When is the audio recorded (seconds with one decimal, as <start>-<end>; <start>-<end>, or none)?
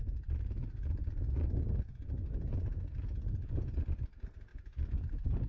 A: 0.0-5.5